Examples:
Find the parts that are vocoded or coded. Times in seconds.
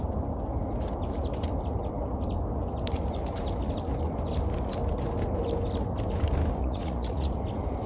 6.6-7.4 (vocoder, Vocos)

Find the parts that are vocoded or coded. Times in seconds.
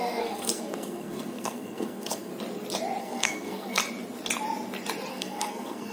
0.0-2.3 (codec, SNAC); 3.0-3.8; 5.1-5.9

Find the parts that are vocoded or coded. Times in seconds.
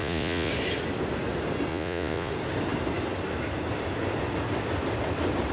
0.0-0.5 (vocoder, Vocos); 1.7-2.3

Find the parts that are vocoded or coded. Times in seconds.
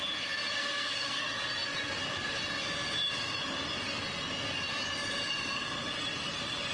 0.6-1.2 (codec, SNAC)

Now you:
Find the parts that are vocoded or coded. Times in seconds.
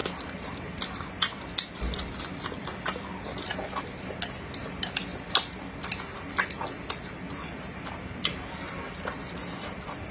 none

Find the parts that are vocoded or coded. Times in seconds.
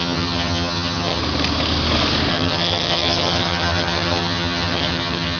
0.0-1.2 (vocoder, HiFi-GAN); 2.3-5.4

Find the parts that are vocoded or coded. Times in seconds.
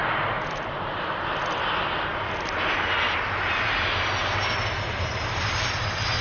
5.1-5.8 (vocoder, BigVGAN v2)